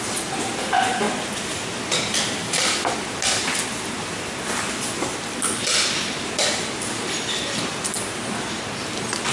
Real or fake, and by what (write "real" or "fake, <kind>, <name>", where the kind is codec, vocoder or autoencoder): real